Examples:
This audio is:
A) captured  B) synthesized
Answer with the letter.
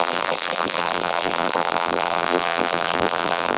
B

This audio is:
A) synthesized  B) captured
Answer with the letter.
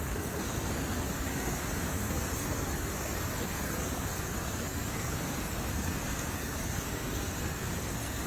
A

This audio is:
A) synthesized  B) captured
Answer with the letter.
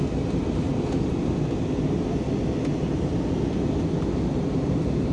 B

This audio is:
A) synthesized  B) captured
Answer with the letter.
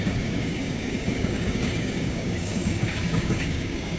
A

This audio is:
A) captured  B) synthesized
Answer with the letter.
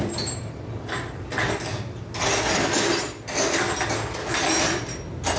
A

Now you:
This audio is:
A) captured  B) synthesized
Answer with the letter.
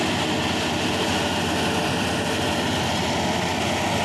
A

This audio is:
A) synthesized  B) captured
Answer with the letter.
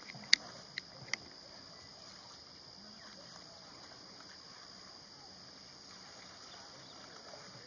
B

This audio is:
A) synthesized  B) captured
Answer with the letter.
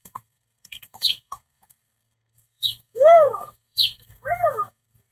A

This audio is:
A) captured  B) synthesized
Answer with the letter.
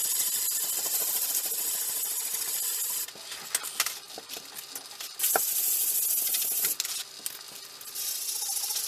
A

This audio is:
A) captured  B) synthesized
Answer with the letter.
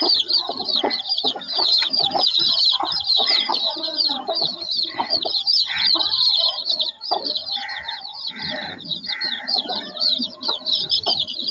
B